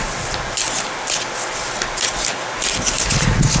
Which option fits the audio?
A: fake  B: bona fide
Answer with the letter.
B